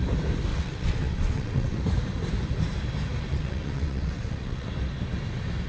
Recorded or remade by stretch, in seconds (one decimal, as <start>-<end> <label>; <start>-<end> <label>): 0.0-0.5 recorded; 0.5-1.8 remade; 1.8-3.3 recorded; 3.3-4.7 remade; 4.7-5.7 recorded